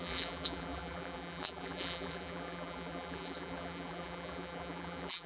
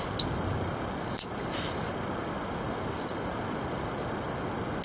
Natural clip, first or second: second